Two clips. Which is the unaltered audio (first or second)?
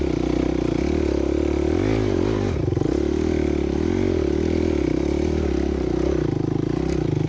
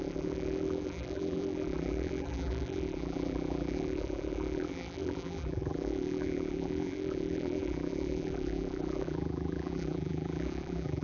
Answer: first